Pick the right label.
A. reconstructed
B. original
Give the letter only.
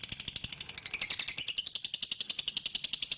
B